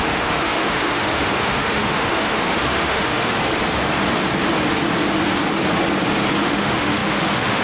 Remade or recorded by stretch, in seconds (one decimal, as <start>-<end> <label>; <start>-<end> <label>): 0.0-3.3 remade; 3.3-6.4 recorded; 6.4-7.6 remade